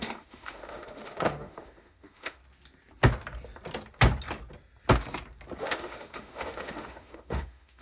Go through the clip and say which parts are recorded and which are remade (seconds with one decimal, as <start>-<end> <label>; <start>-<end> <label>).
0.0-2.4 remade; 2.4-5.6 recorded; 5.6-7.8 remade